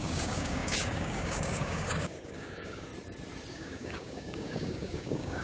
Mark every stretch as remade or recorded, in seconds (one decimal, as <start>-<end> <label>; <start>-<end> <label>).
0.0-2.9 remade; 2.9-3.5 recorded; 3.5-5.4 remade